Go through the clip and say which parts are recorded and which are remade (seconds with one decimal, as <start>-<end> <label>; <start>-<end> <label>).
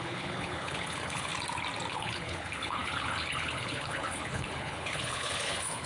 0.0-1.3 remade; 1.3-1.9 recorded; 1.9-5.9 remade